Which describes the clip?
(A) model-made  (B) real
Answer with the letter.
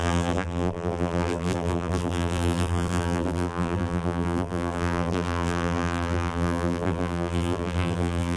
A